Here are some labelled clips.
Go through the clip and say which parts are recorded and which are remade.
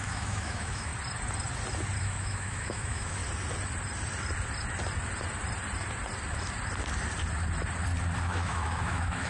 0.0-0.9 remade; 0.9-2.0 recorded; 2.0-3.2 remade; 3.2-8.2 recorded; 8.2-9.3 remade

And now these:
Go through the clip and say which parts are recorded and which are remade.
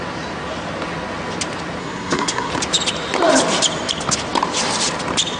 0.0-1.8 recorded; 1.8-2.5 remade; 2.5-5.4 recorded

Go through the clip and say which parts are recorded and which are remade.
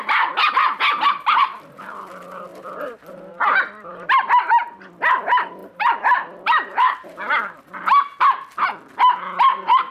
0.0-2.5 recorded; 2.5-4.1 remade; 4.1-5.6 recorded; 5.6-7.6 remade; 7.6-9.9 recorded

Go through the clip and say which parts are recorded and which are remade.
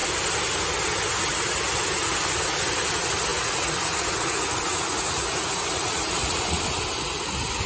0.0-3.3 recorded; 3.3-6.6 remade; 6.6-7.7 recorded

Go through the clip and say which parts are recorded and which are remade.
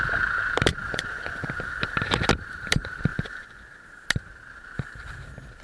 0.0-0.7 recorded; 0.7-1.5 remade; 1.5-3.1 recorded; 3.1-3.6 remade; 3.6-5.6 recorded